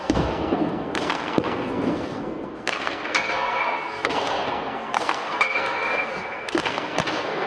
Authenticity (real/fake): fake